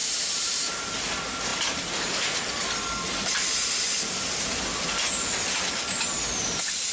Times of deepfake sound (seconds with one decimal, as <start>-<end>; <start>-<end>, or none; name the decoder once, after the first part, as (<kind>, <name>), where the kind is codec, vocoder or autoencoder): 0.0-0.9 (vocoder, BigVGAN v2)